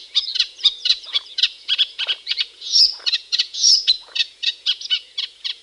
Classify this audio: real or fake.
fake